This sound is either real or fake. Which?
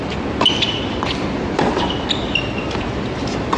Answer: real